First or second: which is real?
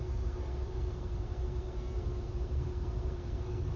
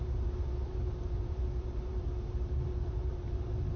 second